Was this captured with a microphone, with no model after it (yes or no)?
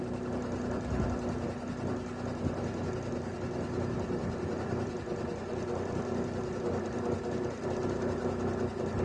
yes